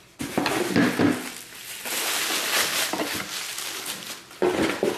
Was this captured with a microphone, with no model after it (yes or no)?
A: yes